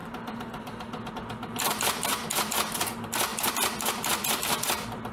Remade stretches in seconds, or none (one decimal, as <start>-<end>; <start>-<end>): 1.1-3.3; 3.9-5.1